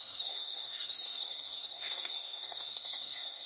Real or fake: fake